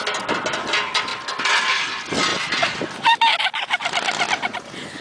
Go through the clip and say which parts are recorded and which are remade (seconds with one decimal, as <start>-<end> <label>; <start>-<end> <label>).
0.0-5.0 recorded